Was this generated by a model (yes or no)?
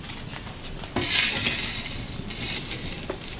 no